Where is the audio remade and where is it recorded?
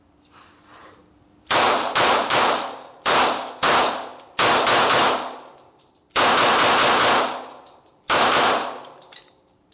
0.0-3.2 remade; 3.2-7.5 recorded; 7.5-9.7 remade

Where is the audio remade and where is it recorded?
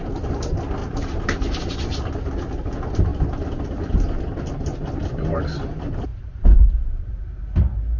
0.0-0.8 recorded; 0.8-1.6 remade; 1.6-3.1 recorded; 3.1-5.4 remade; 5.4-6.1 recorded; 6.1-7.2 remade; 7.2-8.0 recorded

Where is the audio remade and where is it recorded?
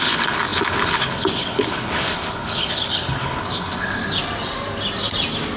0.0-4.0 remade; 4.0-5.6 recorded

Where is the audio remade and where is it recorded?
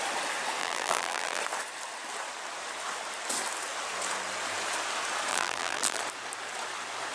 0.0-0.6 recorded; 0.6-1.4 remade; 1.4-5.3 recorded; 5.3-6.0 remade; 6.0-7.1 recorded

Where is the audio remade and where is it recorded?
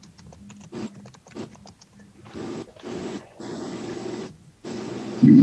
0.0-3.0 recorded; 3.0-5.4 remade